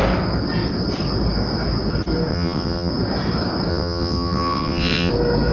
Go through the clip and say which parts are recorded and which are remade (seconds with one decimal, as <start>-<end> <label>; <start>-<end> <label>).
0.0-2.3 recorded; 2.3-2.9 remade; 2.9-3.7 recorded; 3.7-5.1 remade; 5.1-5.5 recorded